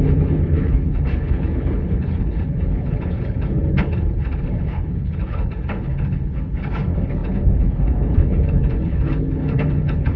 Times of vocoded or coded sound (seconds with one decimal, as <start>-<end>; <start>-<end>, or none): 0.0-10.2